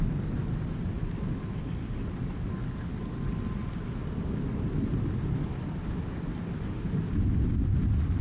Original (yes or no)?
yes